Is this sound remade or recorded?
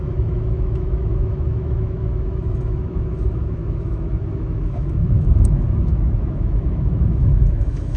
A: remade